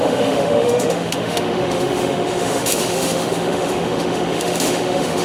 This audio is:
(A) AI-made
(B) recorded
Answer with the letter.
A